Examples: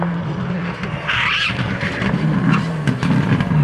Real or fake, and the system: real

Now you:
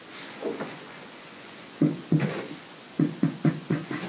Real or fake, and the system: fake, vocoder, Vocos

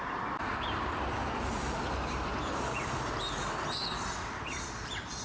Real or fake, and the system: fake, vocoder, BigVGAN v2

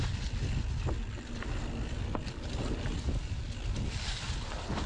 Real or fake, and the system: real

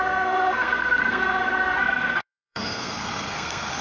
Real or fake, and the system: fake, codec, SNAC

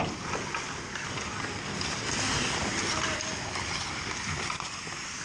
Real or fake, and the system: real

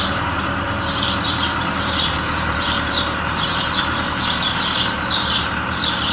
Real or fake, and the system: fake, vocoder, BigVGAN v2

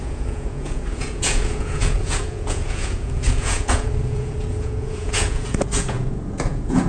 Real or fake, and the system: fake, vocoder, Vocos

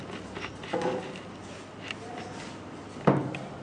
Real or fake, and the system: real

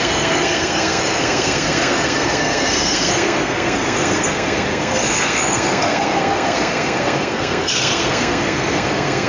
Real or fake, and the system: fake, codec, SNAC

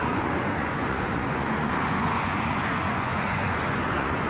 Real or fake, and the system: fake, vocoder, Vocos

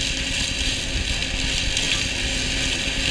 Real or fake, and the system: real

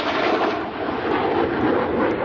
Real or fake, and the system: real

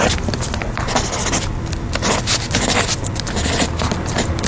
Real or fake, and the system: real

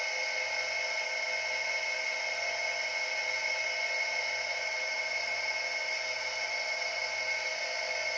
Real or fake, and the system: real